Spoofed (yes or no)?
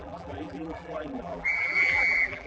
yes